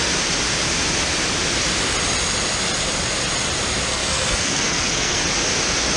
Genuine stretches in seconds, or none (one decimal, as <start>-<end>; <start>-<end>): 0.0-3.9; 5.2-6.0